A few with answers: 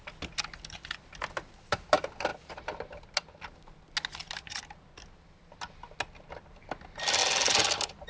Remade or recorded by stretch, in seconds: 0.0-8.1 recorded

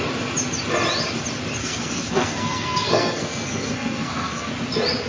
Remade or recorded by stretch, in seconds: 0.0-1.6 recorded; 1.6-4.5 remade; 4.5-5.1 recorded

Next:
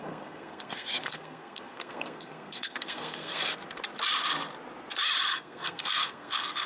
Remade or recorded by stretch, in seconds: 0.0-3.4 remade; 3.4-5.3 recorded; 5.3-6.7 remade

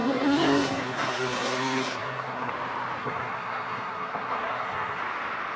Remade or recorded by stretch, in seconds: 0.0-2.5 remade; 2.5-3.0 recorded; 3.0-5.0 remade; 5.0-5.6 recorded

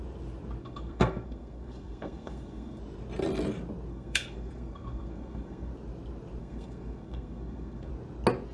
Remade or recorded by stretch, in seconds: 0.0-0.6 recorded; 0.6-2.8 remade; 2.8-3.9 recorded; 3.9-5.7 remade; 5.7-6.4 recorded; 6.4-7.9 remade; 7.9-8.5 recorded

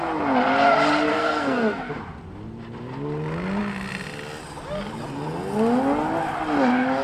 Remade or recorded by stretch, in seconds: 0.0-1.1 recorded; 1.1-1.9 remade; 1.9-7.0 recorded

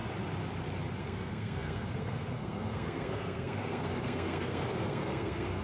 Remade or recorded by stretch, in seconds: 0.0-1.0 recorded; 1.0-5.6 remade

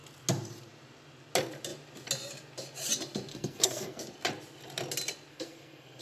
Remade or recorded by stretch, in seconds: 0.0-3.3 recorded; 3.3-4.0 remade; 4.0-5.3 recorded; 5.3-6.0 remade